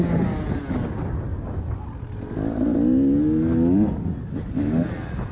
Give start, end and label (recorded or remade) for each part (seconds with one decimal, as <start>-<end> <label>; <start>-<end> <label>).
0.0-5.3 recorded